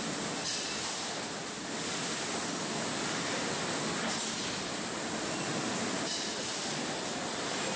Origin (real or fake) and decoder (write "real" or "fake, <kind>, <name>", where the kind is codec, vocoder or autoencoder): real